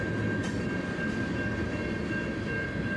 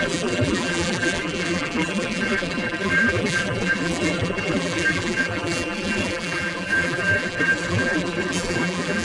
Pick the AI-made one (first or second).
second